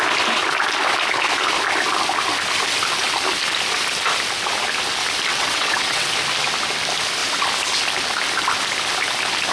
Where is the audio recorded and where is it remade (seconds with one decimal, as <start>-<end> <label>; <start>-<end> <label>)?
0.0-5.3 recorded; 5.3-6.1 remade; 6.1-9.5 recorded